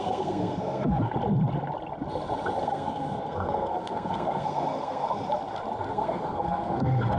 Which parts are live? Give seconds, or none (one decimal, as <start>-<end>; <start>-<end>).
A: 1.1-2.6; 5.1-5.9